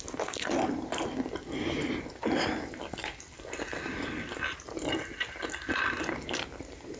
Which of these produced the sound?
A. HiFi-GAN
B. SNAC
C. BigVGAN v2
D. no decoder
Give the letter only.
D